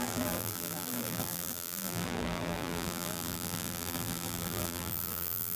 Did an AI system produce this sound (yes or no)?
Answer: yes